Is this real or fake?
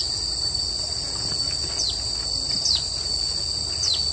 real